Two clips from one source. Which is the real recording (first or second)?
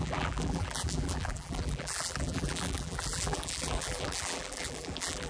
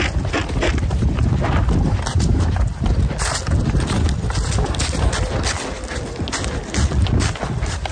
second